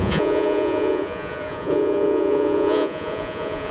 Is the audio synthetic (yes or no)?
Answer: yes